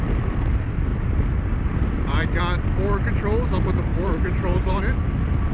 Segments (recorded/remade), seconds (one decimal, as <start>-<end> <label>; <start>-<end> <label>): 0.0-0.9 recorded; 0.9-2.4 remade; 2.4-3.9 recorded; 3.9-4.8 remade; 4.8-5.5 recorded